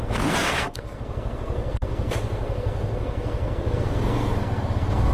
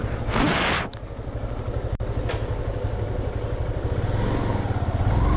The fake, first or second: first